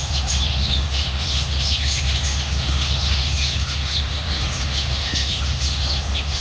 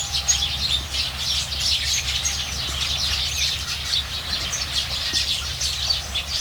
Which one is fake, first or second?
first